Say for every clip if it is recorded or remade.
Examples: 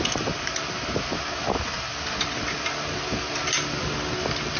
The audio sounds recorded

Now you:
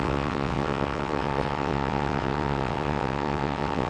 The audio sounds remade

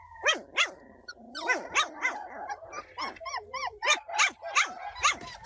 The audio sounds recorded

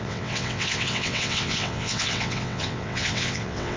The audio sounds remade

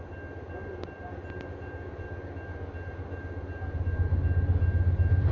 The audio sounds recorded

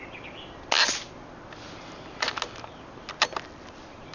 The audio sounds recorded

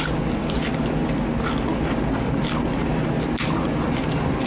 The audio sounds recorded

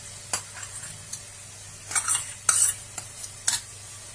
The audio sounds recorded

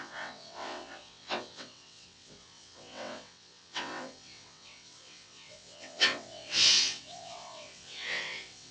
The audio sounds remade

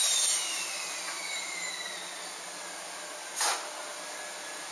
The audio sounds recorded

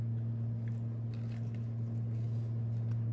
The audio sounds recorded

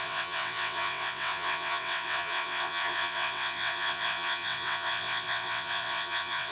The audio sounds remade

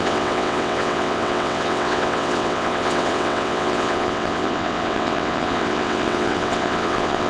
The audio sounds remade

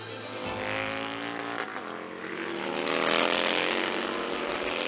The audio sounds recorded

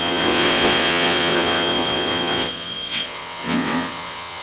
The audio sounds remade